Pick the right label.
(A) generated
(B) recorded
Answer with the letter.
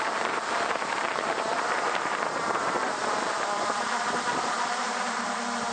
A